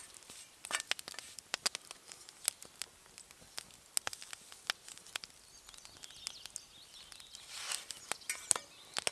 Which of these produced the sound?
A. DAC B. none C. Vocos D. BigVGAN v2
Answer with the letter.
B